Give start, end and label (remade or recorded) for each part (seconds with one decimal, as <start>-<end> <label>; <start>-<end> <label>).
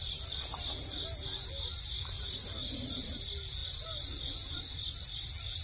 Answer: 0.0-5.6 recorded